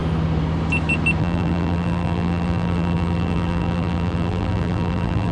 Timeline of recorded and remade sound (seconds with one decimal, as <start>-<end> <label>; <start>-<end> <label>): 0.0-1.2 recorded; 1.2-5.3 remade